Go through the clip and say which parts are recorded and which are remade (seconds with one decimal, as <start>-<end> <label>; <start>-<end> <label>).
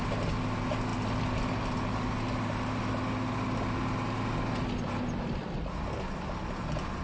0.0-7.0 recorded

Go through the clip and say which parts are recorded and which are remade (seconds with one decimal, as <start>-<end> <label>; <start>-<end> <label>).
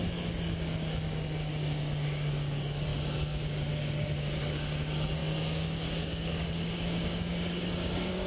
0.0-8.3 remade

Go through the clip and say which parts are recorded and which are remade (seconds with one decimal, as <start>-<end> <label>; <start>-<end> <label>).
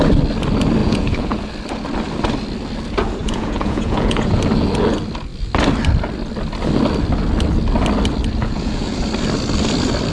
0.0-0.8 recorded; 0.8-1.5 remade; 1.5-3.2 recorded; 3.2-4.4 remade; 4.4-8.4 recorded; 8.4-9.0 remade; 9.0-10.1 recorded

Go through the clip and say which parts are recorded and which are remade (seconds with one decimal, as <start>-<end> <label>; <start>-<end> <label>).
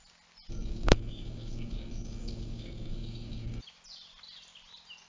0.0-0.5 recorded; 0.5-3.6 remade; 3.6-5.1 recorded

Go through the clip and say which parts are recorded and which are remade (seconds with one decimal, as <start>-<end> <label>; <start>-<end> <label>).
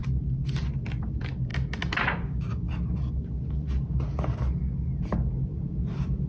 0.0-0.7 recorded; 0.7-1.5 remade; 1.5-5.3 recorded; 5.3-6.3 remade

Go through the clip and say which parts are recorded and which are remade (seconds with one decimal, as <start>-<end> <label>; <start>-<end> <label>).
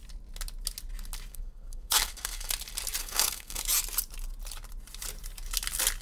0.0-1.3 recorded; 1.3-2.5 remade; 2.5-3.0 recorded; 3.0-3.6 remade; 3.6-6.0 recorded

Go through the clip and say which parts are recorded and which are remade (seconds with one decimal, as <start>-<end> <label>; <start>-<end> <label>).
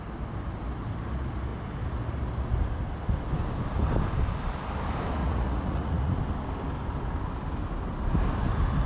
0.0-5.2 recorded; 5.2-6.2 remade; 6.2-8.9 recorded